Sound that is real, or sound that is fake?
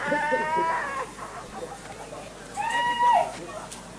real